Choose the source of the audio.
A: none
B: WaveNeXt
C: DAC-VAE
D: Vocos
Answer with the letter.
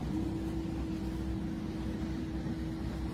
A